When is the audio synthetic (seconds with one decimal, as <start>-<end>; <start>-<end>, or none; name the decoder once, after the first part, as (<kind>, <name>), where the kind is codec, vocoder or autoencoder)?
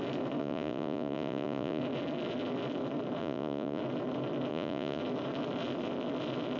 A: 0.4-1.8 (vocoder, Vocos); 3.2-3.8; 4.5-5.0